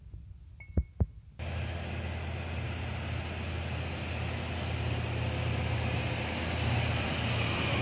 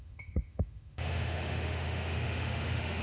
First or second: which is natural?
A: first